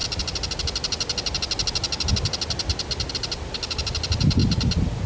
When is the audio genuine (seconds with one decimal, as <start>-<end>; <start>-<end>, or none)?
0.0-5.1